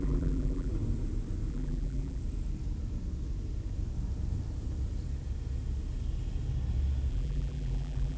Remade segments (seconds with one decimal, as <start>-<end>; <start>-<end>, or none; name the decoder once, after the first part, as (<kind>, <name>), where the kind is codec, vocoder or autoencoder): 0.0-0.7 (vocoder, BigVGAN v2); 1.5-2.2; 7.1-8.2